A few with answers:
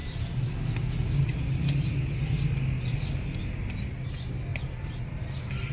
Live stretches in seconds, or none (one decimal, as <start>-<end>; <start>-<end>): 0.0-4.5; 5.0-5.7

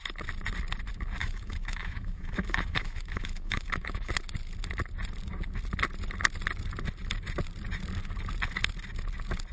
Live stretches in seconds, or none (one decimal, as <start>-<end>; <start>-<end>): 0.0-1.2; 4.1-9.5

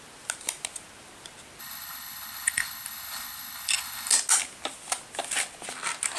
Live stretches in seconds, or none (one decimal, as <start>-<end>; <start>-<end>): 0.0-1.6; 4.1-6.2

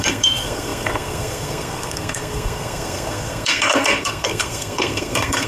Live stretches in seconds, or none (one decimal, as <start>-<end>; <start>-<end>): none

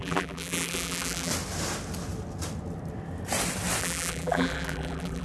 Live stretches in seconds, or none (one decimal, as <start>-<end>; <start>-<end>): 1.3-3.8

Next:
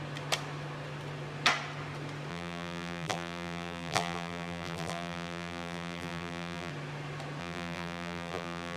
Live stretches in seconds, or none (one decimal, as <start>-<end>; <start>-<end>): 0.0-2.3; 6.7-7.4

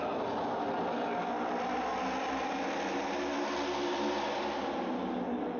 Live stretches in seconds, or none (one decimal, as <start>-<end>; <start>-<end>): 0.0-5.6

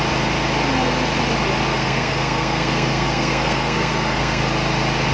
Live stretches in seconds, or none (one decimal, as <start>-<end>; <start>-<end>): 0.0-1.7; 4.4-5.1